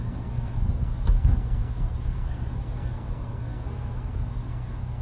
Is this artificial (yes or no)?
yes